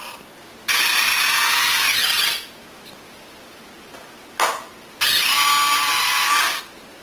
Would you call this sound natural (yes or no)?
yes